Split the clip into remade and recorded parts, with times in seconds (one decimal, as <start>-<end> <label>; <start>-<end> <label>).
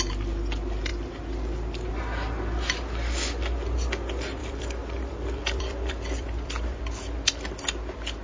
0.0-4.4 recorded; 4.4-6.8 remade; 6.8-8.2 recorded